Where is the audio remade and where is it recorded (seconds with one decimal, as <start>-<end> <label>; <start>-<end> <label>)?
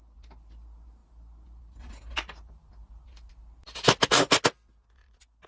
0.0-5.5 recorded